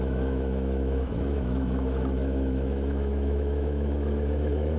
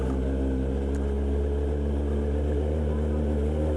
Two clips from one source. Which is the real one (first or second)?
second